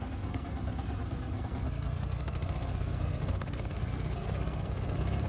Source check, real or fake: fake